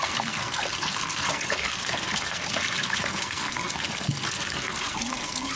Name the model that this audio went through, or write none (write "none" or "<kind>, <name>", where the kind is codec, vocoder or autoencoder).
codec, SNAC